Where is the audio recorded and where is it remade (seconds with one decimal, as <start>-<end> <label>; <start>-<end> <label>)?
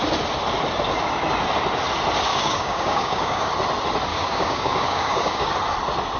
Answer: 0.0-2.3 recorded; 2.3-3.5 remade; 3.5-4.1 recorded; 4.1-5.5 remade; 5.5-6.2 recorded